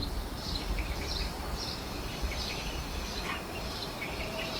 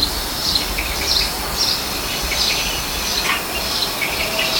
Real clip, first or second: second